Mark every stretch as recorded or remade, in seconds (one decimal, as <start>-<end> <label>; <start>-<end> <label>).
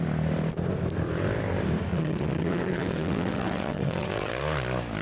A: 0.0-1.9 recorded; 1.9-4.3 remade; 4.3-5.0 recorded